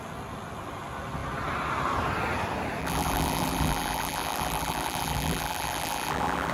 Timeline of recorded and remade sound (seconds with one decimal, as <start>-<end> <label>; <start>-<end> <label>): 0.0-2.8 recorded; 2.8-6.5 remade